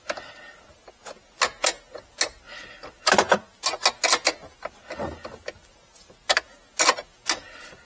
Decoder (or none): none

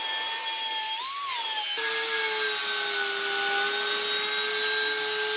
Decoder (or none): none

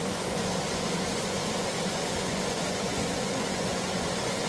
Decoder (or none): vocoder, Vocos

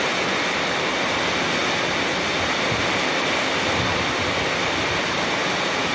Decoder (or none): none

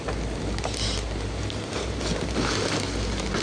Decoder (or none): none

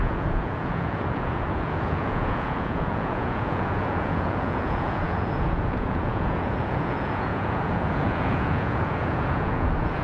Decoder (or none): vocoder, Vocos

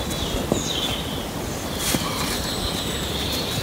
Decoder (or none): none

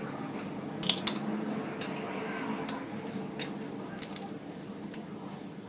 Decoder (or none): none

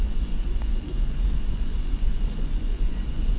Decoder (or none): vocoder, Vocos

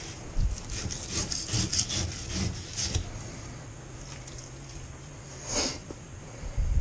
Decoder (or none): none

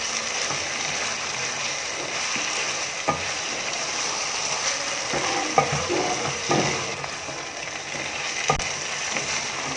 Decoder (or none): none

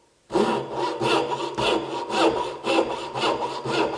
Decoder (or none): none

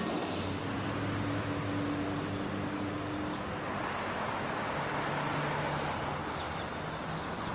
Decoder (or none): none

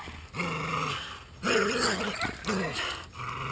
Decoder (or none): none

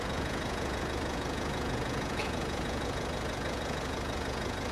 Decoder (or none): vocoder, Vocos